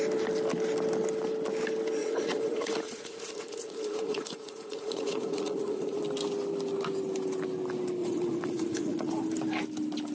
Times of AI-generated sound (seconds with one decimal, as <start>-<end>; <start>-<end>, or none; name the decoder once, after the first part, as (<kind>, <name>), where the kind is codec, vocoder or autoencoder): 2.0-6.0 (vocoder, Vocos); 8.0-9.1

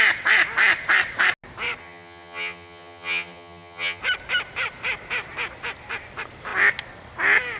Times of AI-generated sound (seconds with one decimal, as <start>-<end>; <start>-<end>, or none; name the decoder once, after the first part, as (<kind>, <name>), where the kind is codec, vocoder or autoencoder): 1.8-4.0 (vocoder, HiFi-GAN)

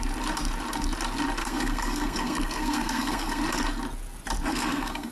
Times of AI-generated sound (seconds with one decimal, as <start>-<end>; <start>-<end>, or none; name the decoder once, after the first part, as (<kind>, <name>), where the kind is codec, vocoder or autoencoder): 1.4-3.4 (codec, SNAC); 4.5-5.1